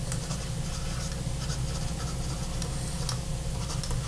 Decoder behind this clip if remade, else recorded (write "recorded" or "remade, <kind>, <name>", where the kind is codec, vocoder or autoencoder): recorded